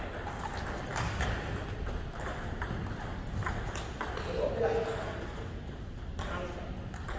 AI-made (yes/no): no